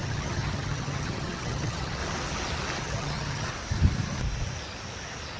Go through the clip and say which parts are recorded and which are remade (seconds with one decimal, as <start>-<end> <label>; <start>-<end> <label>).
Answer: 0.0-2.0 remade; 2.0-2.8 recorded; 2.8-3.5 remade; 3.5-5.4 recorded